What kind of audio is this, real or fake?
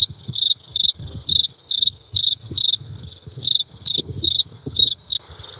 fake